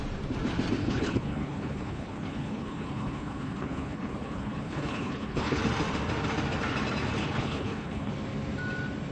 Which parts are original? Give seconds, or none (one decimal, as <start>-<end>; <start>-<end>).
0.0-0.8; 5.6-7.2; 8.1-9.1